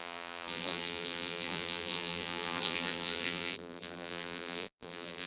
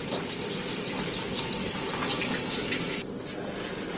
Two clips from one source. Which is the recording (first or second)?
second